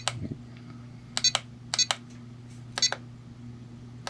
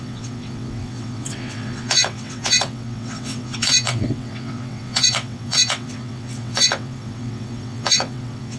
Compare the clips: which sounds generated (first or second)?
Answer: second